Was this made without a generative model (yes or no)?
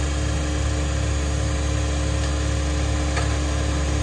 yes